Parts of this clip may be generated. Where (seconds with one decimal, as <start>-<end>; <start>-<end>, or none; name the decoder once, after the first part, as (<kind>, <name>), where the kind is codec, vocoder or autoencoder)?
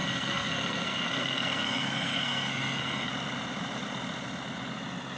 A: 0.0-3.1 (codec, SNAC)